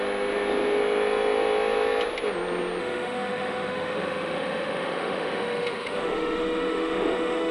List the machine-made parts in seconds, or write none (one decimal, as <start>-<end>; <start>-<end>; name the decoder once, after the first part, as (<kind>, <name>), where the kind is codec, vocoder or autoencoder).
2.8-7.5 (autoencoder, DAC-VAE)

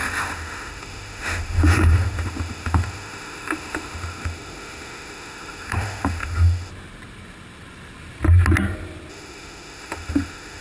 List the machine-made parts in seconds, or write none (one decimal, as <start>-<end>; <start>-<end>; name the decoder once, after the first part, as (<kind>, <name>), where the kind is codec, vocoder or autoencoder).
0.0-6.7 (autoencoder, DAC-VAE); 9.1-10.6

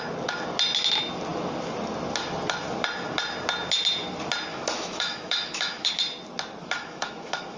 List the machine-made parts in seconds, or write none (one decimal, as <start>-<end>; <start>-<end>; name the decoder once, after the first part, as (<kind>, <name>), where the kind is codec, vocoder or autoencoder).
4.5-5.9 (autoencoder, DAC-VAE); 6.6-7.6

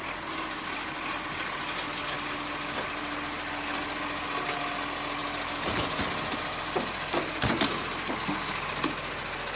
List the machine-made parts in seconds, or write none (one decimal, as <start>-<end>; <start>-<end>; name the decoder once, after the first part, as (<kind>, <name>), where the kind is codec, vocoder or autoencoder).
none

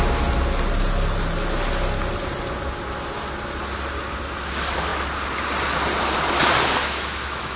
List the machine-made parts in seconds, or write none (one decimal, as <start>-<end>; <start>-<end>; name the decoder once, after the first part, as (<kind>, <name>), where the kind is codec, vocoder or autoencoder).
6.8-7.6 (autoencoder, DAC-VAE)